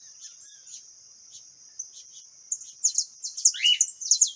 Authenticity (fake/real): real